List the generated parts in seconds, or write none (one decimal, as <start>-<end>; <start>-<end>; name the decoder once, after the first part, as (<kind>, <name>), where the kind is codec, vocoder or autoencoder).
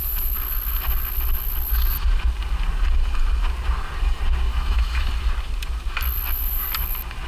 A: 4.5-5.1 (autoencoder, DAC-VAE)